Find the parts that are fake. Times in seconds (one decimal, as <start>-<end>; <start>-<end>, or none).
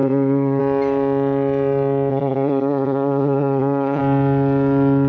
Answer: 0.0-0.6; 2.1-4.0